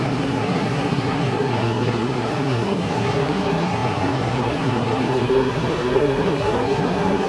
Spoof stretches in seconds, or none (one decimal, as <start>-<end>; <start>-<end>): 0.0-7.3